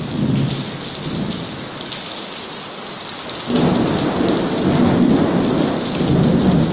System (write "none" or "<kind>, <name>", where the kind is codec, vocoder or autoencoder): none